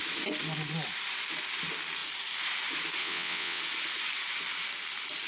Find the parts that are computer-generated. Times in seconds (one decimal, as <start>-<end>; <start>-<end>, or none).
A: 3.0-3.6